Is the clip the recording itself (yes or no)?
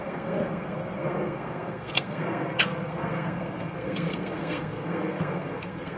no